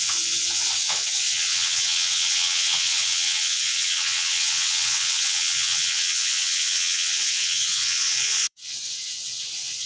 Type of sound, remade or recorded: remade